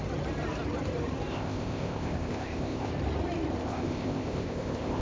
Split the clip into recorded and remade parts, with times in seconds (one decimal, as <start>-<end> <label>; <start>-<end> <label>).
0.0-1.3 recorded; 1.3-2.9 remade; 2.9-3.6 recorded; 3.6-5.0 remade